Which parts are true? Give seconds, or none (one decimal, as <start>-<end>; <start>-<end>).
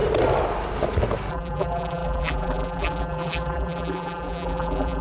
0.0-1.3